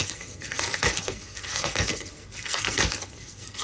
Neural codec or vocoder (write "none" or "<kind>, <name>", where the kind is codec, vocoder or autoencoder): codec, SNAC